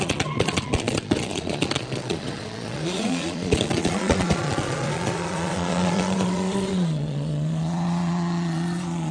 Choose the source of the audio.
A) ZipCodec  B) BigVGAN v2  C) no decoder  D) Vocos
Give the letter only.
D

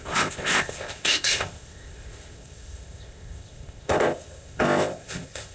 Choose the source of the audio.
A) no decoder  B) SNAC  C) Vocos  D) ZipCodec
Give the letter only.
D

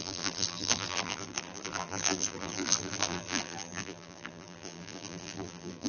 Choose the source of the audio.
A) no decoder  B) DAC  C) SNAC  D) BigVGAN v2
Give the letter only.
D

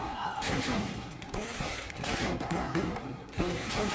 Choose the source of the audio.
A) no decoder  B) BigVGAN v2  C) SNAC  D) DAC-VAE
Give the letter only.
C